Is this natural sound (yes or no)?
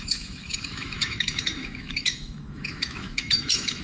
no